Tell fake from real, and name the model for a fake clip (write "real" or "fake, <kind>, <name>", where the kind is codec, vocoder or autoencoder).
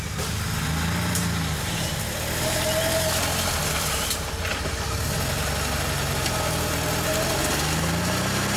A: real